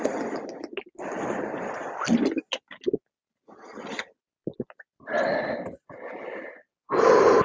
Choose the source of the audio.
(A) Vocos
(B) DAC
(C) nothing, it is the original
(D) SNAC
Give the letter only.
C